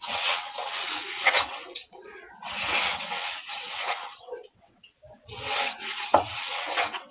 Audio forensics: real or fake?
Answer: fake